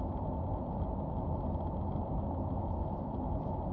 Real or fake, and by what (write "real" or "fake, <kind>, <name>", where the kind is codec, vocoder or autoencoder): real